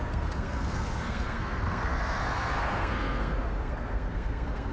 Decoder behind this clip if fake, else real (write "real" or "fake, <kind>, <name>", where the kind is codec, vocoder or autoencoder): fake, codec, SNAC